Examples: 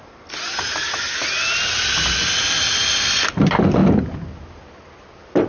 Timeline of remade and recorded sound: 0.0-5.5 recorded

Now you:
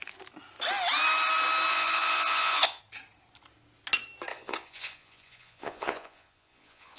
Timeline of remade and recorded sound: 0.0-1.7 recorded; 1.7-2.8 remade; 2.8-4.3 recorded; 4.3-7.0 remade

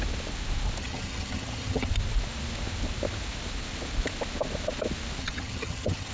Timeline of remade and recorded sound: 0.0-0.8 recorded; 0.8-1.9 remade; 1.9-5.2 recorded; 5.2-6.1 remade